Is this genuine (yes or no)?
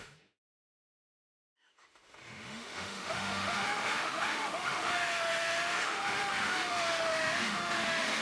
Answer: no